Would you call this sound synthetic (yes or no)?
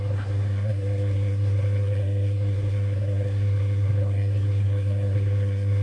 yes